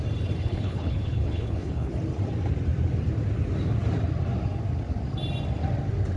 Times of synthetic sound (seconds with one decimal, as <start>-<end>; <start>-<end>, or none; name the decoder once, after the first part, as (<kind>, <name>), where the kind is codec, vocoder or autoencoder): 0.4-1.9 (codec, HILCodec)